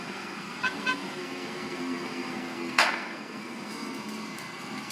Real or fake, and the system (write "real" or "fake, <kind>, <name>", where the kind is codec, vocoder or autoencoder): fake, codec, SNAC